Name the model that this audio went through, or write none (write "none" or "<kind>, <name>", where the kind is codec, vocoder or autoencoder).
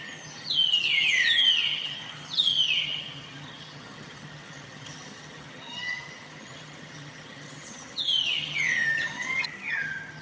vocoder, HiFi-GAN